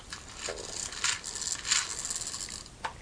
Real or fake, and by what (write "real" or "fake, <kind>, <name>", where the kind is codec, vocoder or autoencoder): real